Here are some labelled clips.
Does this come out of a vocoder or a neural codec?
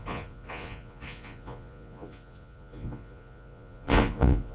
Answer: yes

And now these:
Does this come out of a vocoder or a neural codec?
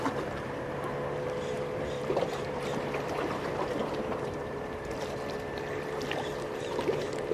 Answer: yes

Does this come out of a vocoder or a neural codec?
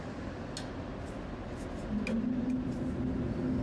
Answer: no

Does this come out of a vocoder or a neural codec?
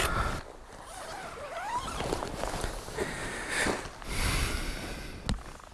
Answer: no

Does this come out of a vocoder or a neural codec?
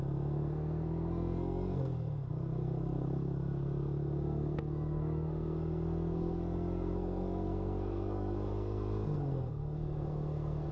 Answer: yes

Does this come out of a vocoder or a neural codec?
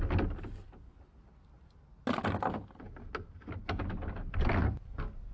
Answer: no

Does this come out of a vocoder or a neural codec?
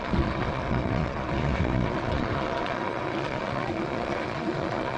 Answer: yes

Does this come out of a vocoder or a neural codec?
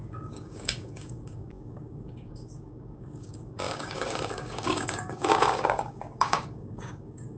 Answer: yes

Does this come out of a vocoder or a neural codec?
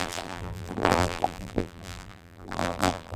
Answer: yes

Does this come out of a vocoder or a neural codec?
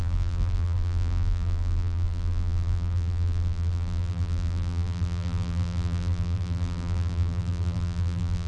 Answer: yes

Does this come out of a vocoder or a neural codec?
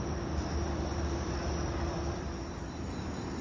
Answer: no